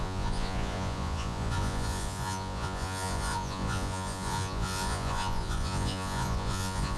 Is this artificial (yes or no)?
yes